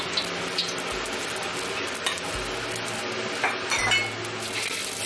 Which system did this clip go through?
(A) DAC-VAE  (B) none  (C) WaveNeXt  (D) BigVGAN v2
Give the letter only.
B